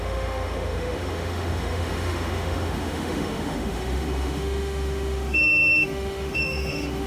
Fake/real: fake